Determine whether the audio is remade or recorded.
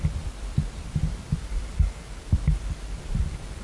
remade